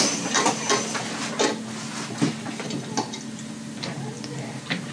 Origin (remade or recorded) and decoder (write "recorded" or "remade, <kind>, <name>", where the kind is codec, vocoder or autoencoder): recorded